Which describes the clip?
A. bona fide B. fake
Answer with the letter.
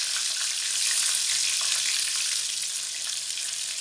A